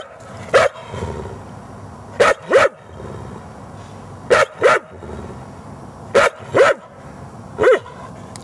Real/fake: real